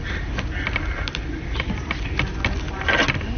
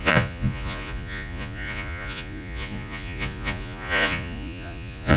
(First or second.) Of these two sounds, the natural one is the first